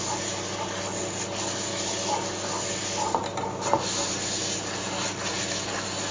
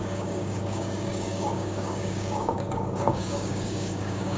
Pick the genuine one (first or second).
first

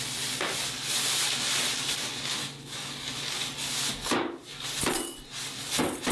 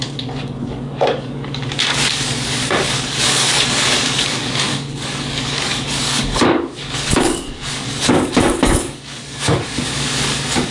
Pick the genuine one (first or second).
first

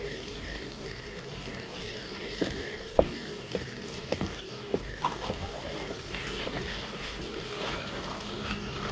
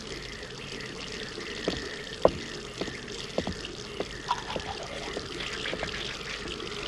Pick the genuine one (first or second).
second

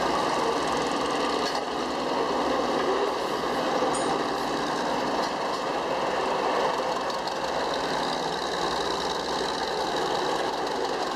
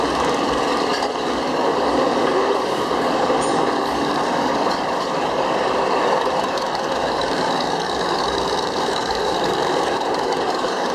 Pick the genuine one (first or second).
first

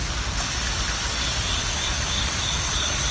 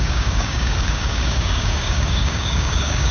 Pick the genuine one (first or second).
first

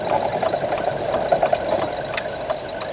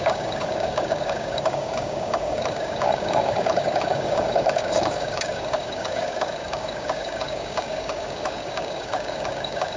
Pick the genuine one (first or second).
first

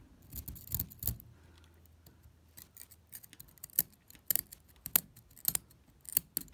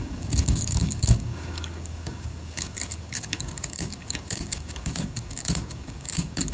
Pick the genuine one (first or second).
first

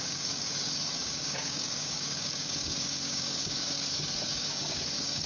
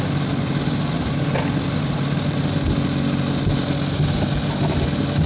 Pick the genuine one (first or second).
second